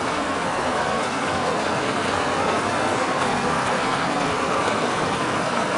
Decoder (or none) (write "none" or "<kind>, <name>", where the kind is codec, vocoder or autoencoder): codec, SNAC